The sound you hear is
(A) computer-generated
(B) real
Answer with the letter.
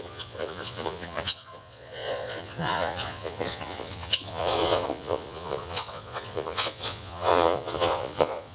A